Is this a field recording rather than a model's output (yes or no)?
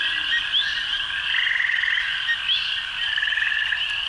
yes